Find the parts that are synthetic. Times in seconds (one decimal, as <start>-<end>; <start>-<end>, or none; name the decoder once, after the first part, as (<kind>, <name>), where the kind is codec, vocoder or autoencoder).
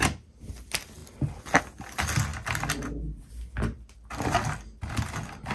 none